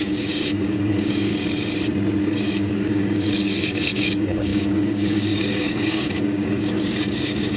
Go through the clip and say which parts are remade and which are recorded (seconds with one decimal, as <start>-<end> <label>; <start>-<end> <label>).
0.0-1.3 remade; 1.3-2.2 recorded; 2.2-7.6 remade